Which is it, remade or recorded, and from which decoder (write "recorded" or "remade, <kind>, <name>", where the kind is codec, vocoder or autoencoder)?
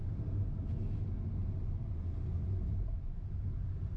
recorded